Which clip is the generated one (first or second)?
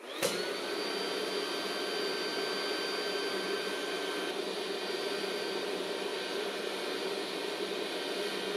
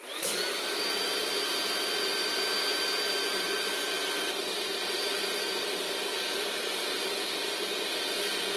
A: second